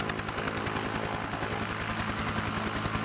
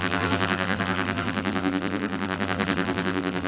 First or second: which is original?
first